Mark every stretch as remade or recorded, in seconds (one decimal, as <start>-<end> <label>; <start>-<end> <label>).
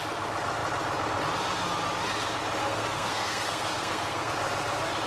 0.0-2.6 recorded; 2.6-4.3 remade; 4.3-5.1 recorded